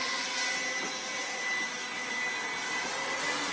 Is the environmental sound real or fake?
real